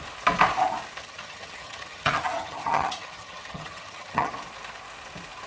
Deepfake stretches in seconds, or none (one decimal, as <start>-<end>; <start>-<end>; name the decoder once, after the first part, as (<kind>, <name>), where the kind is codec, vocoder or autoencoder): 1.0-4.3 (vocoder, HiFi-GAN)